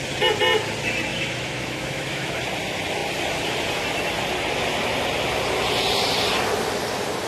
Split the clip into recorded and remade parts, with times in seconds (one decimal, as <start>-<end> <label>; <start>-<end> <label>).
0.0-1.1 recorded; 1.1-2.3 remade; 2.3-7.3 recorded